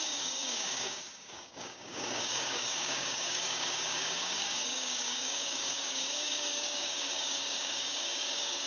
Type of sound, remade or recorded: remade